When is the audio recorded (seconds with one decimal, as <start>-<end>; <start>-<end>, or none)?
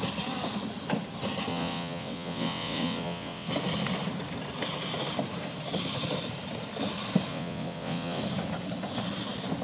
0.0-1.5; 3.5-7.3; 8.2-9.6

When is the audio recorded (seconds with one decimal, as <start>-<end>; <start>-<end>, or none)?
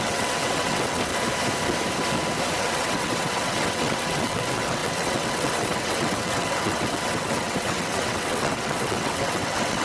1.1-2.6